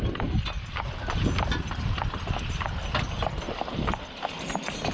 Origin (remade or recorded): recorded